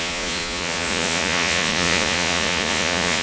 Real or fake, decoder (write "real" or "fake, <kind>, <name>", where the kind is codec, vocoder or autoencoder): fake, vocoder, Vocos